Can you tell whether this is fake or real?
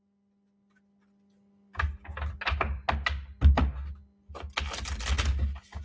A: real